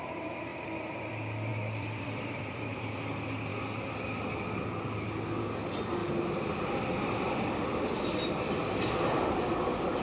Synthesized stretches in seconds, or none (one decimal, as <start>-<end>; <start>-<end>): 0.5-1.1; 1.5-3.0; 6.0-6.5